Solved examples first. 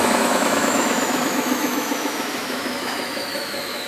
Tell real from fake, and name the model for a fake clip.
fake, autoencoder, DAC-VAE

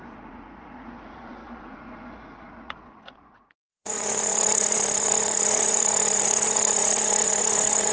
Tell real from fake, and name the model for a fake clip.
fake, vocoder, Vocos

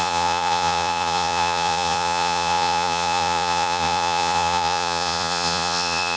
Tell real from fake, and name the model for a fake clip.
fake, vocoder, Vocos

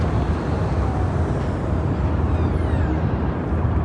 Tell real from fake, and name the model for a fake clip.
real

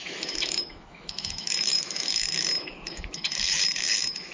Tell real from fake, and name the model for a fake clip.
fake, autoencoder, DAC-VAE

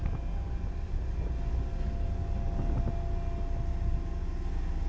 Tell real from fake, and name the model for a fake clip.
real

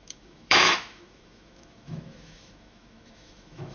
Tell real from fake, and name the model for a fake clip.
fake, autoencoder, DAC-VAE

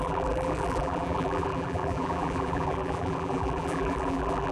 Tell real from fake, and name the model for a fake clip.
fake, vocoder, BigVGAN v2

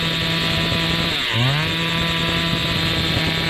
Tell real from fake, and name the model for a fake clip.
real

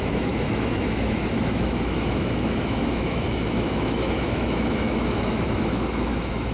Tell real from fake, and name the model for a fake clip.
fake, autoencoder, DAC-VAE